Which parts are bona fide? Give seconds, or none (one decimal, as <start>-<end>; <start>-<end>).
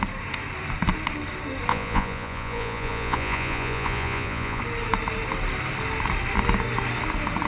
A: 0.0-1.7; 4.6-7.5